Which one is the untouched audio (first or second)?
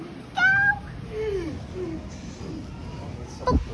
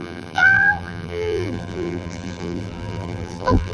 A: first